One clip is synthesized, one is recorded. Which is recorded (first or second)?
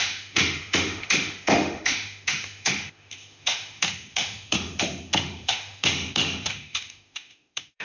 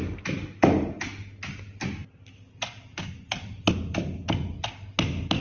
second